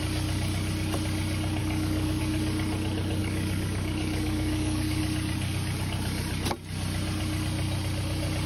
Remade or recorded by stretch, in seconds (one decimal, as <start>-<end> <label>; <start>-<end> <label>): 0.0-1.6 recorded; 1.6-2.2 remade; 2.2-3.2 recorded; 3.2-5.0 remade; 5.0-8.5 recorded